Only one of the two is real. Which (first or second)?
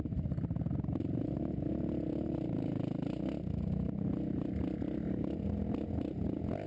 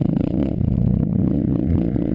first